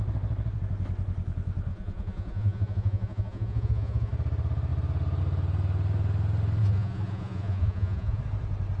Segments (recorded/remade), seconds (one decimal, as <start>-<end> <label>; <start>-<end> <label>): 0.0-1.7 recorded; 1.7-4.1 remade; 4.1-6.6 recorded; 6.6-8.2 remade; 8.2-8.8 recorded